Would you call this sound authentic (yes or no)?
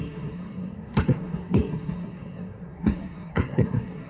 no